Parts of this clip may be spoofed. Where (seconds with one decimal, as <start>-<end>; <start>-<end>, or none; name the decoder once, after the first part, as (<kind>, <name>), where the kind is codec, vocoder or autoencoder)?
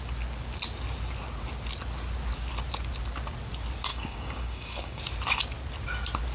3.9-5.0 (codec, DAC)